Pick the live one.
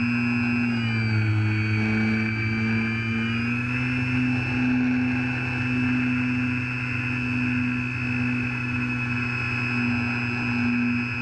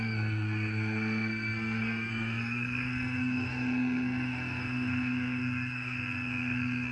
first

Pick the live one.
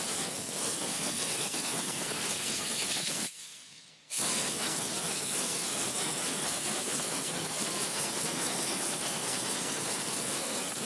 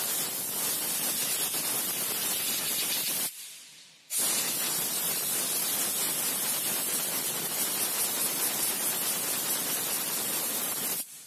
second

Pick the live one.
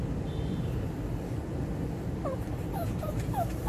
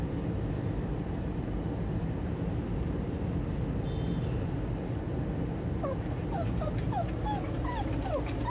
second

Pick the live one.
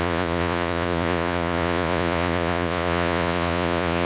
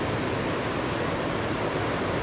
second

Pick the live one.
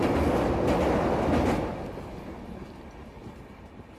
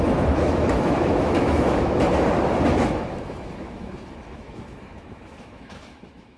first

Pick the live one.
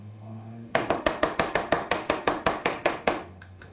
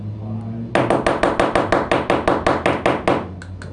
second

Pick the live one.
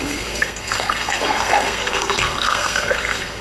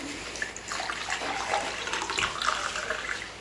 second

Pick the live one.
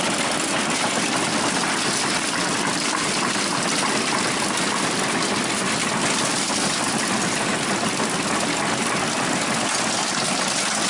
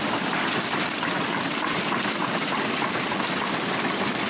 first